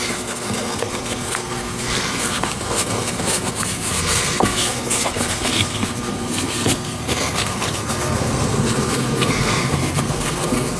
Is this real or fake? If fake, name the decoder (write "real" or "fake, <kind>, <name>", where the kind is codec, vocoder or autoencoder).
fake, codec, SNAC